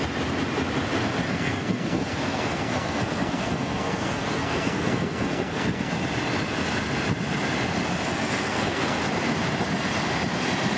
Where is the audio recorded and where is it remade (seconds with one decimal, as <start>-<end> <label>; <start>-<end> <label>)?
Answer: 0.0-1.3 recorded; 1.3-5.9 remade; 5.9-8.1 recorded; 8.1-9.0 remade; 9.0-10.8 recorded